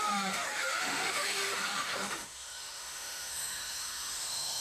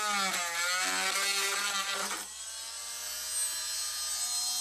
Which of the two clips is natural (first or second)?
second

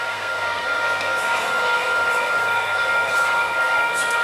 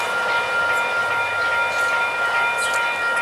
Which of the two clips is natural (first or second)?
second